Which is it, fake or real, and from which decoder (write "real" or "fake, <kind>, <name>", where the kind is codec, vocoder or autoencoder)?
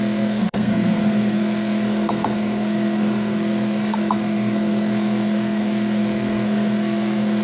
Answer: fake, codec, SNAC